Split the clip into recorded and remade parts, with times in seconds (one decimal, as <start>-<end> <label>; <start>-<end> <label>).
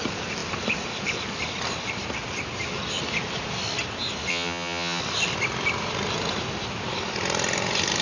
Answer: 0.0-4.3 recorded; 4.3-5.0 remade; 5.0-8.0 recorded